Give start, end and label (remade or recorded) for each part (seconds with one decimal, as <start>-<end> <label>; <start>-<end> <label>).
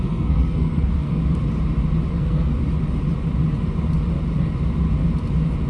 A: 0.0-1.2 remade; 1.2-2.1 recorded; 2.1-2.5 remade; 2.5-5.7 recorded